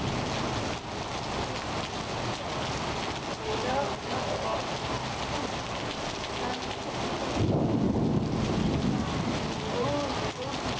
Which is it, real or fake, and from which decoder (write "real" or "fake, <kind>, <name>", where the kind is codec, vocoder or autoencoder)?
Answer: real